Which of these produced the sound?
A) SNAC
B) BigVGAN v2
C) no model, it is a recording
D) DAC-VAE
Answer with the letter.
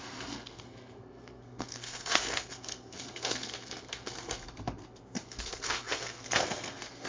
A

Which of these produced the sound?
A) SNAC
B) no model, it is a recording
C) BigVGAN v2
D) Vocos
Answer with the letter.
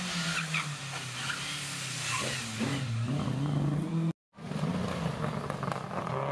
B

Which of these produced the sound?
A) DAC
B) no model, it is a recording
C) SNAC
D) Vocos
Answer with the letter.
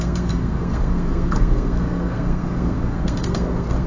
C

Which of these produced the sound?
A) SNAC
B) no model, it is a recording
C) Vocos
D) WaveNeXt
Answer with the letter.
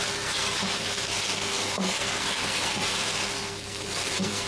A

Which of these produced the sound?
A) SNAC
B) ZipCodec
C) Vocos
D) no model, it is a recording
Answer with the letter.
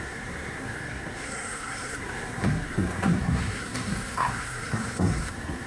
A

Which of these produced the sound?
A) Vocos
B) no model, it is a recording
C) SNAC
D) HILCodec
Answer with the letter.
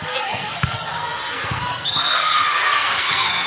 C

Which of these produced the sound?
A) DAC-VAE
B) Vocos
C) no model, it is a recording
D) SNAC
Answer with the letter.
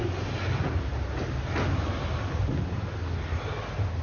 C